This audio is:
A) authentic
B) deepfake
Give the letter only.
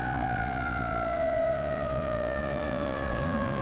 B